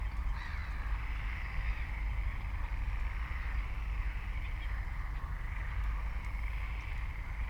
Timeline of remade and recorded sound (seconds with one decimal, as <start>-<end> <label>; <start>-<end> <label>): 0.0-7.5 recorded

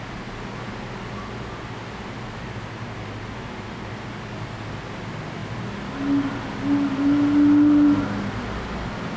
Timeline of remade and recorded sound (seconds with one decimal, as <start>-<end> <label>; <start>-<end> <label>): 0.0-9.2 recorded

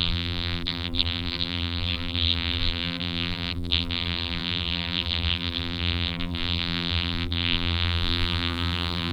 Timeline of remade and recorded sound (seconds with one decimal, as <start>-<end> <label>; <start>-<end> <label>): 0.0-9.1 remade

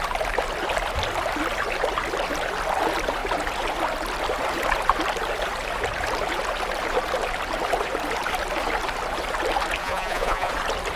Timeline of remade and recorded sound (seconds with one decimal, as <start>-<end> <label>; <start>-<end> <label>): 0.0-9.8 recorded; 9.8-10.5 remade; 10.5-11.0 recorded

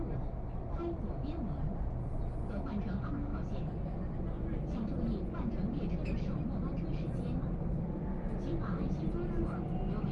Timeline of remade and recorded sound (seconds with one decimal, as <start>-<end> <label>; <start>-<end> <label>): 0.0-10.1 recorded

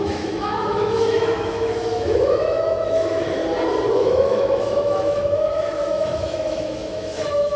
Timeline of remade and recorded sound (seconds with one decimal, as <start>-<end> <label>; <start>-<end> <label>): 0.0-3.4 remade; 3.4-3.9 recorded; 3.9-7.6 remade

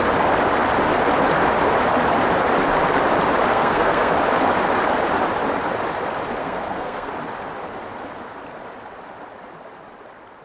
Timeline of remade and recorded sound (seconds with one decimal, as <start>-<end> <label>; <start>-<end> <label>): 0.0-3.5 recorded; 3.5-4.1 remade; 4.1-6.4 recorded; 6.4-7.1 remade; 7.1-10.4 recorded

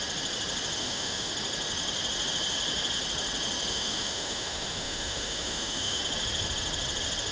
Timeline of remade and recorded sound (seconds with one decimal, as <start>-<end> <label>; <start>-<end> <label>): 0.0-0.8 recorded; 0.8-1.3 remade; 1.3-3.7 recorded; 3.7-6.0 remade; 6.0-7.3 recorded